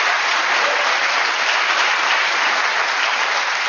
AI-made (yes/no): no